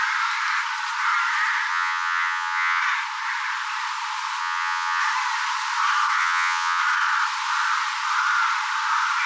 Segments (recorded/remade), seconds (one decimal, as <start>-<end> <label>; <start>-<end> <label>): 0.0-1.7 recorded; 1.7-2.8 remade; 2.8-4.4 recorded; 4.4-5.0 remade; 5.0-6.2 recorded; 6.2-6.8 remade; 6.8-9.3 recorded